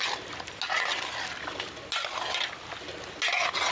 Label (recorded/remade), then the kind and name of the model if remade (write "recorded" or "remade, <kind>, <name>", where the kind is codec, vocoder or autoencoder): recorded